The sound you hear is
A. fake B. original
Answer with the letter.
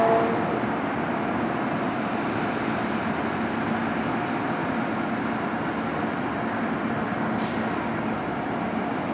B